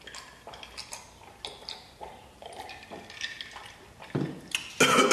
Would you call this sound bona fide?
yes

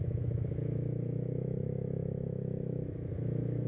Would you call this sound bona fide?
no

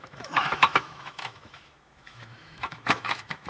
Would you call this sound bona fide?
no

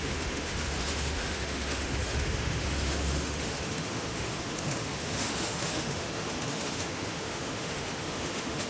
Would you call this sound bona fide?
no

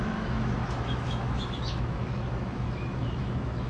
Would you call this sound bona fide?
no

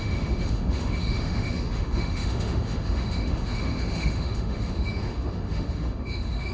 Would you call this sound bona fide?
no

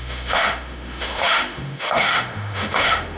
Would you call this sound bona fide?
no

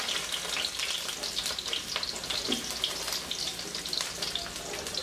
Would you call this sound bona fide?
yes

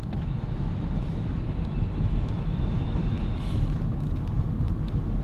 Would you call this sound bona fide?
no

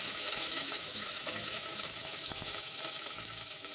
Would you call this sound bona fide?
no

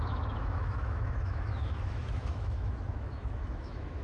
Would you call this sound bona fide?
no